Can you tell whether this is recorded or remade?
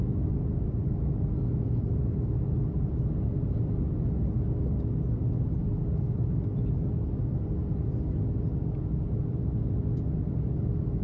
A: recorded